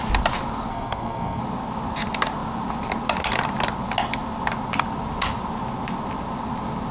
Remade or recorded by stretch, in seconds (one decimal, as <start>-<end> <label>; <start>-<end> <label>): 0.0-0.7 recorded; 0.7-1.4 remade; 1.4-6.9 recorded